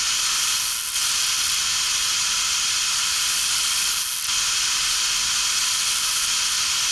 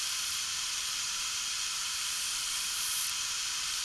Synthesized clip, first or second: second